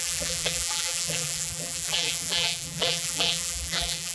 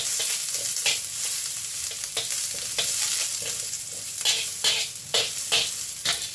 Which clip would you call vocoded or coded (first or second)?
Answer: first